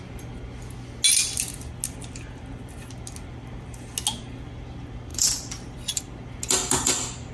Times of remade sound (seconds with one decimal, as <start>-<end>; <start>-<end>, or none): 5.1-6.0